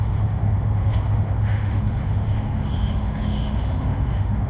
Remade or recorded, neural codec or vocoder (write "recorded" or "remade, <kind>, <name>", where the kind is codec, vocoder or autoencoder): remade, autoencoder, DAC-VAE